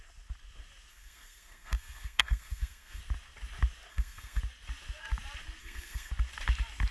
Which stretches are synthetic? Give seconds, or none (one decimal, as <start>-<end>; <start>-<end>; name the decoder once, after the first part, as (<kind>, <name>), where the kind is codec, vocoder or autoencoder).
0.9-3.0 (codec, SNAC); 3.9-4.4; 5.6-6.1